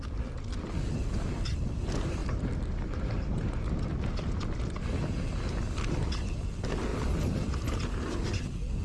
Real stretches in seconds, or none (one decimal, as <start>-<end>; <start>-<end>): 0.0-8.8